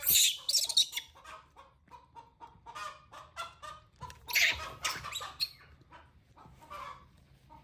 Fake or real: real